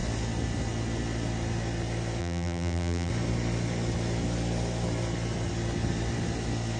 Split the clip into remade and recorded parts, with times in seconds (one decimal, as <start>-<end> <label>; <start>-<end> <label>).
0.0-2.2 recorded; 2.2-3.1 remade; 3.1-6.8 recorded